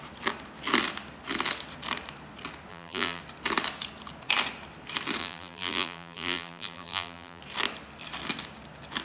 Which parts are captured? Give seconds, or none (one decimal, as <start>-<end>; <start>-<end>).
0.0-2.7; 3.2-5.2; 7.4-9.0